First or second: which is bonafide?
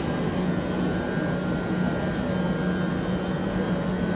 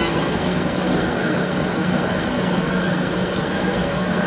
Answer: first